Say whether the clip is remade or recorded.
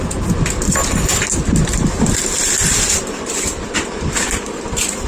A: recorded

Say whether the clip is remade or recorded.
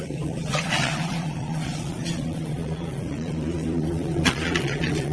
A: remade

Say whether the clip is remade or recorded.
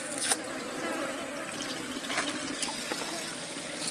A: recorded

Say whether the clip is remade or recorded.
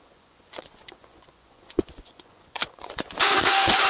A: remade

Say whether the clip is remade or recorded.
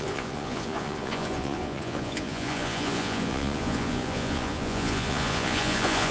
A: remade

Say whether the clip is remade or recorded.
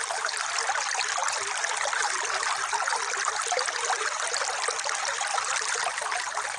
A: recorded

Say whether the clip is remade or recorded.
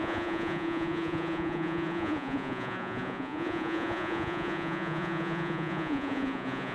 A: remade